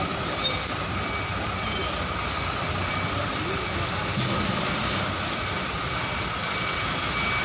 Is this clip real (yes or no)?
yes